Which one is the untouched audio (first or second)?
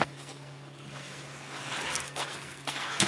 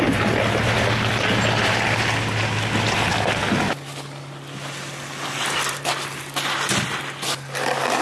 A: second